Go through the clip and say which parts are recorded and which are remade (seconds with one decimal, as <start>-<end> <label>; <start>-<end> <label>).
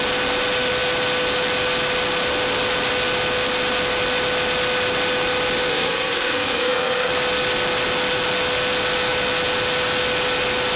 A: 0.0-5.7 recorded; 5.7-7.1 remade; 7.1-10.8 recorded